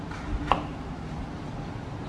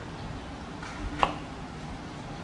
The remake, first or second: first